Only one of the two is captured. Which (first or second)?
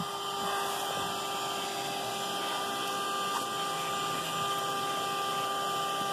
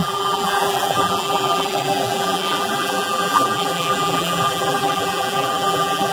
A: first